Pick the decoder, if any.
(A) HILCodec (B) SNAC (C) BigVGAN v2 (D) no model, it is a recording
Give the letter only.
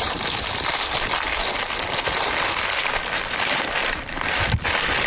D